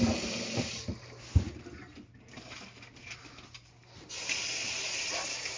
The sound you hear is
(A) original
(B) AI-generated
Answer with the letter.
A